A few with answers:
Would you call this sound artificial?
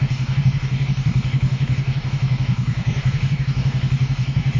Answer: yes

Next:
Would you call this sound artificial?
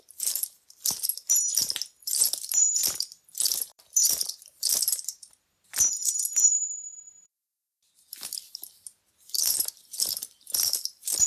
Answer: yes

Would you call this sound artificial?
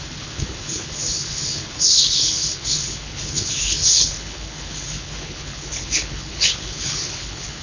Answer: yes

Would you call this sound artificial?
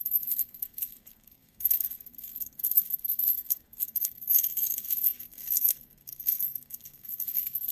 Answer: yes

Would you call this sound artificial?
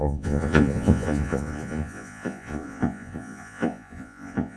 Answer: yes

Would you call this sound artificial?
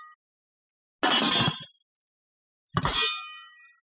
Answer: no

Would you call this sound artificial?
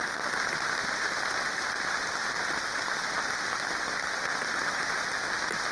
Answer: no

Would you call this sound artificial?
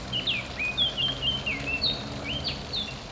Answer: no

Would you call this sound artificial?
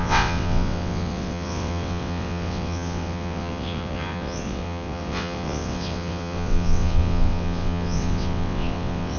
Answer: yes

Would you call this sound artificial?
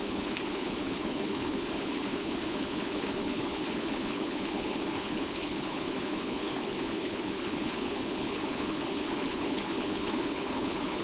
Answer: yes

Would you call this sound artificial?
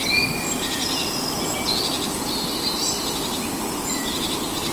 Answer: yes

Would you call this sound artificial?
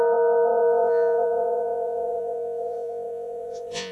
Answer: yes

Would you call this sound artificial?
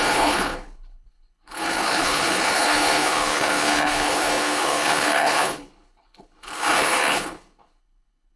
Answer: yes